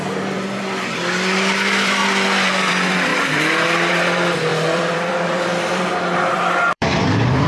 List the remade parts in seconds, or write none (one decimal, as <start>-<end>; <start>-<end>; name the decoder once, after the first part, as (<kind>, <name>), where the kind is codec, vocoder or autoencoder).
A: 0.0-2.0 (vocoder, BigVGAN v2); 2.7-7.5